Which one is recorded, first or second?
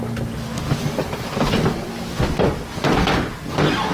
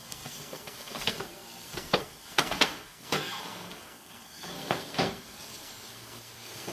first